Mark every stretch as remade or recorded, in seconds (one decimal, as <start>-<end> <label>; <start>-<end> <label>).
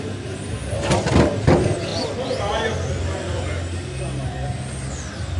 0.0-5.4 recorded